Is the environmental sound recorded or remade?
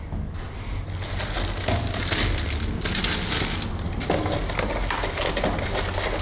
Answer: recorded